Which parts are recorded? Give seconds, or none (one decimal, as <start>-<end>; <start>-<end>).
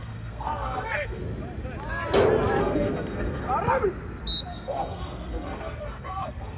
1.2-2.6; 3.5-4.5